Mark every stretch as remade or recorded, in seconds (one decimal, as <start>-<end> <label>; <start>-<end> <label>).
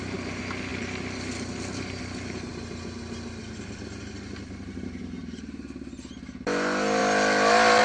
0.0-7.8 recorded